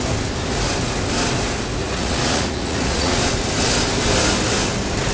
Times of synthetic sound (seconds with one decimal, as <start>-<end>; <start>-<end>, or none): 1.8-3.2